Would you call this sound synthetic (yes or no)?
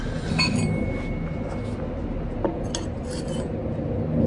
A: no